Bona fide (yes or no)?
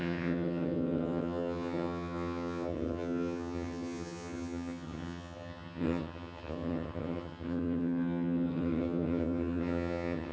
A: no